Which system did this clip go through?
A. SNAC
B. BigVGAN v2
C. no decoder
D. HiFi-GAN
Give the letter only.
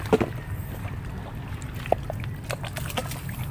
C